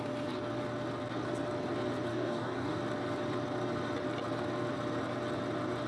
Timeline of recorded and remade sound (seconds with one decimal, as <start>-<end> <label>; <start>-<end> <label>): 0.0-2.1 recorded; 2.1-2.8 remade; 2.8-5.9 recorded